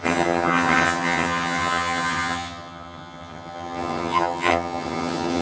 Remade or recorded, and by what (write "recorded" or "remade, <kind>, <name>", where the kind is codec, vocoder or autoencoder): remade, vocoder, HiFi-GAN